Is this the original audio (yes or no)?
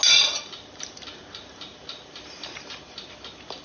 yes